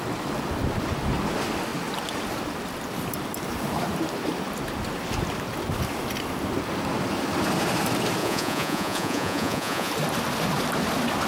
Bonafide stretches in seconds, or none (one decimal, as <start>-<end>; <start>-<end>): 0.0-8.2; 9.9-11.3